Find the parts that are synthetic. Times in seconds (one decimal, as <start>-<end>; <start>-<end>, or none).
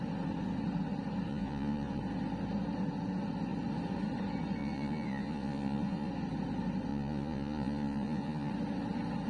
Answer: 1.3-2.0; 4.6-6.1; 6.9-8.5